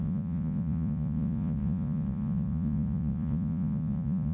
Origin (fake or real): fake